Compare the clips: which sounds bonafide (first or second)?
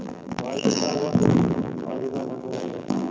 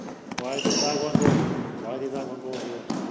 second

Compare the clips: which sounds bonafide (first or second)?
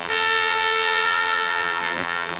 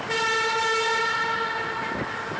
second